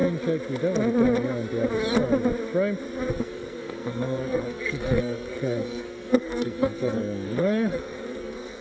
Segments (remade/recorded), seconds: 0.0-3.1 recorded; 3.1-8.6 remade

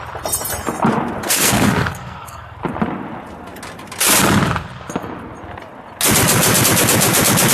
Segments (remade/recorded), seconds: 0.0-1.2 recorded; 1.2-2.6 remade; 2.6-7.5 recorded

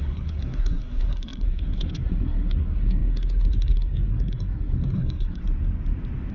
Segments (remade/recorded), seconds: 0.0-5.4 remade; 5.4-6.3 recorded

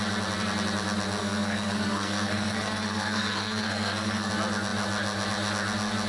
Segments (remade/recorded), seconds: 0.0-1.2 recorded; 1.2-4.3 remade; 4.3-6.1 recorded

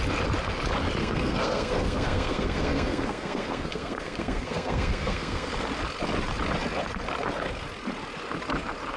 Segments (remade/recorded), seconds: 0.0-1.0 recorded; 1.0-5.5 remade; 5.5-9.0 recorded

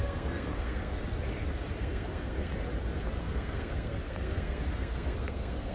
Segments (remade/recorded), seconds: 0.0-1.0 remade; 1.0-1.8 recorded; 1.8-2.5 remade; 2.5-3.2 recorded; 3.2-5.7 remade